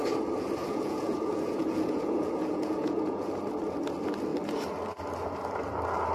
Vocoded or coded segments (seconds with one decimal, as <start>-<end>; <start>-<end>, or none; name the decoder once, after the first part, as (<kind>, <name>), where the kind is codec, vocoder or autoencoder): 0.6-3.3 (vocoder, Vocos)